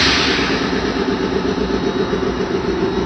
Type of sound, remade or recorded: recorded